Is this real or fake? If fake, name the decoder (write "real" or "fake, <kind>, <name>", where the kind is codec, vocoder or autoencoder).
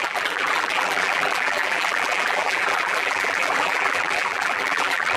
fake, vocoder, BigVGAN v2